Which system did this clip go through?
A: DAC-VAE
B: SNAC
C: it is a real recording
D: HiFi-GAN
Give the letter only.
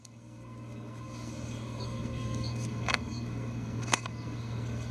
B